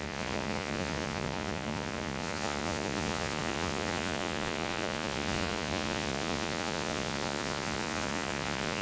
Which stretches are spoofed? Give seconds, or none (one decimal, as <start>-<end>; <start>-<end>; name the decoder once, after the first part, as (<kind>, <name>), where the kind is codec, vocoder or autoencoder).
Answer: 0.0-8.8 (vocoder, Vocos)